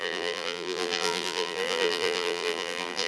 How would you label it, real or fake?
fake